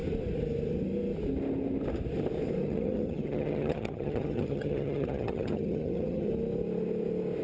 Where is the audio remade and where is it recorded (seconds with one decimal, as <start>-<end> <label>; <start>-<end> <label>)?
0.0-2.6 recorded; 2.6-6.3 remade; 6.3-7.4 recorded